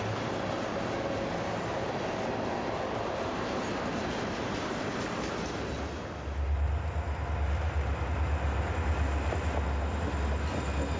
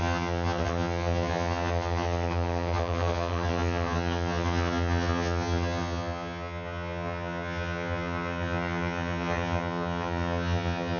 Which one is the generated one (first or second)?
second